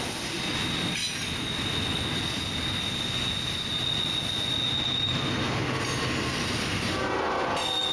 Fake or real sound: real